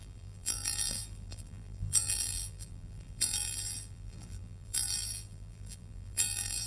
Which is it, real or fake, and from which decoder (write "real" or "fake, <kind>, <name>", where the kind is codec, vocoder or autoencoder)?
fake, vocoder, BigVGAN v2